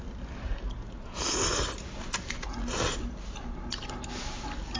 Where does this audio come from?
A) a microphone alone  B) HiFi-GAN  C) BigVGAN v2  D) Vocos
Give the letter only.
A